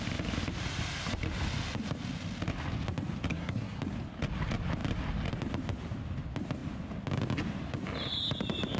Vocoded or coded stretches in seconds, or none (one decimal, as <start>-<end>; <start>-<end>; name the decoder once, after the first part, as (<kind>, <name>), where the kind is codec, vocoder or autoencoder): 3.3-3.8 (codec, SNAC)